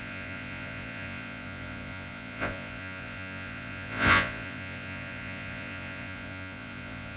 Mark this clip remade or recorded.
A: remade